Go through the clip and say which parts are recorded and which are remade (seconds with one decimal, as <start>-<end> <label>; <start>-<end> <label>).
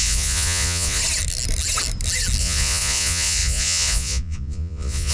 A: 0.0-1.0 remade; 1.0-2.4 recorded; 2.4-5.1 remade